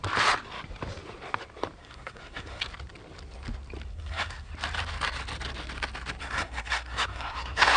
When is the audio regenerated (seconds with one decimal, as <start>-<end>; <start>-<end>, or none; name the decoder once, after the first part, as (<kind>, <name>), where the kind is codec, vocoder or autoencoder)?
1.8-2.6 (codec, SNAC); 3.9-4.5; 6.2-7.8